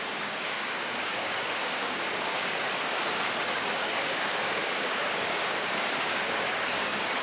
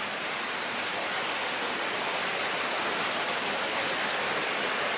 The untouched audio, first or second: second